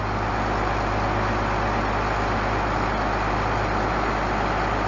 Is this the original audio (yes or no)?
yes